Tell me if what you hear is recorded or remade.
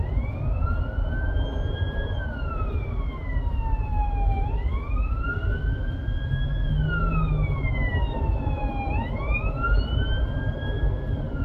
recorded